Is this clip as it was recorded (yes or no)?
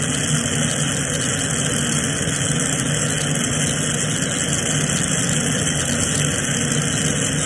yes